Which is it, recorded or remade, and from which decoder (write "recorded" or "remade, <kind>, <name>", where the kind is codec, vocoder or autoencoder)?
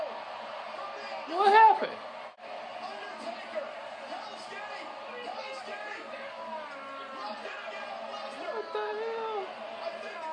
recorded